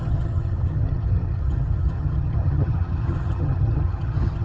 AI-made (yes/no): yes